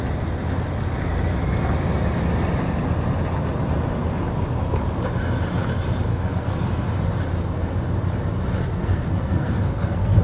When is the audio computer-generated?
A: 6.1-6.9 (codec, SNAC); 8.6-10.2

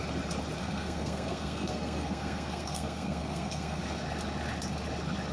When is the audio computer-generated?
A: 0.6-3.8 (codec, SNAC)

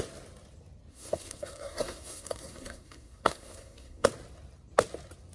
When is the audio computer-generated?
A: 0.9-4.1 (codec, SNAC)

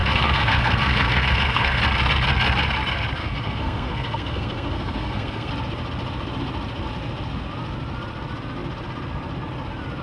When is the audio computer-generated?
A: 0.0-1.8 (codec, SNAC); 3.2-5.5